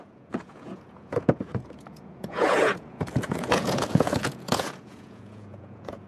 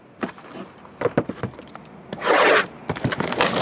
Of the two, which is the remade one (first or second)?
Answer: first